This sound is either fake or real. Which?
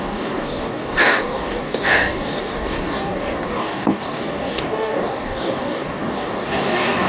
fake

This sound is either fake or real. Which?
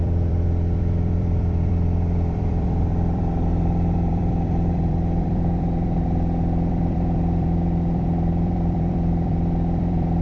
fake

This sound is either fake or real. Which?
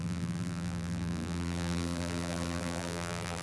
fake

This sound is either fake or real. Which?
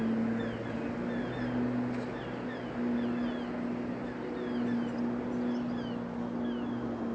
real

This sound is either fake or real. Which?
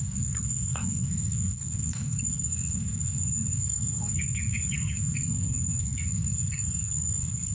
fake